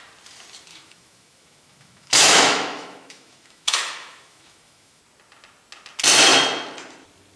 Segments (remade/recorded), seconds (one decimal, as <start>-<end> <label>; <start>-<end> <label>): 0.0-0.7 recorded; 0.7-5.0 remade; 5.0-7.4 recorded